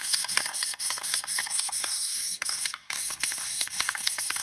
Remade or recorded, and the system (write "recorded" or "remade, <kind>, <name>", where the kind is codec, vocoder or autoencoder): remade, codec, SNAC